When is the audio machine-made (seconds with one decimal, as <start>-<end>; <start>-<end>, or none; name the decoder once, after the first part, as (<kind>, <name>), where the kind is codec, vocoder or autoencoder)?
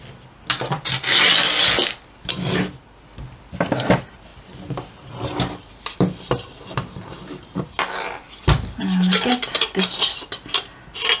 none